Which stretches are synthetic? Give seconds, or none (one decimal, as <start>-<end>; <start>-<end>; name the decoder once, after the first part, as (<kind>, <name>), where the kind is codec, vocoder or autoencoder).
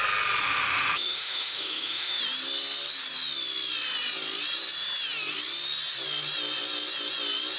0.4-2.2 (autoencoder, DAC-VAE)